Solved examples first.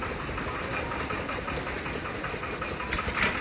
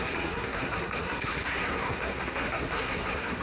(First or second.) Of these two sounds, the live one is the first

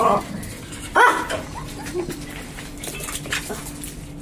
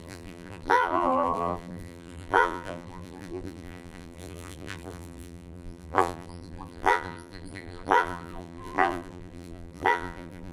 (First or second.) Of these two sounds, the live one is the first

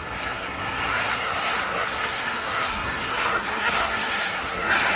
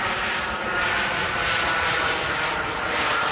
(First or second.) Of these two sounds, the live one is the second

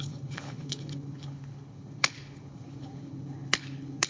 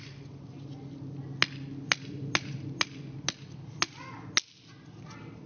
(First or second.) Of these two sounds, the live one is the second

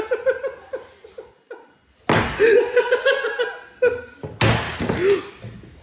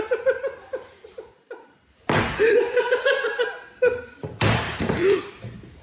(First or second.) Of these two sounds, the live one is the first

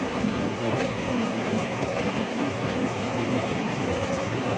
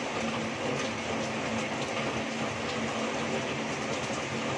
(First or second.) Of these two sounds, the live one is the second